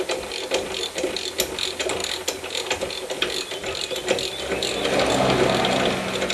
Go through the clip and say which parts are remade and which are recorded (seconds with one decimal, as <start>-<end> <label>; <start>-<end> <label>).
0.0-6.3 recorded